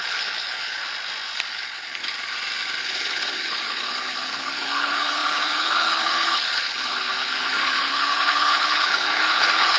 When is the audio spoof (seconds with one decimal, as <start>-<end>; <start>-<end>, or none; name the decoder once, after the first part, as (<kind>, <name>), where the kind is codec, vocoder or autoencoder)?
0.0-0.8 (codec, HILCodec); 1.5-2.0; 2.8-9.8